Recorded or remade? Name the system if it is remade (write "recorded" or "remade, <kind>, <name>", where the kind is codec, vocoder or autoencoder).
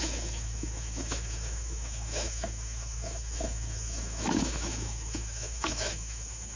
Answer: remade, autoencoder, DAC-VAE